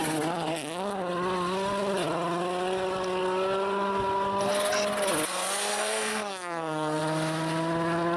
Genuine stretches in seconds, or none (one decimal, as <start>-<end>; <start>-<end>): 0.0-5.7; 7.0-8.2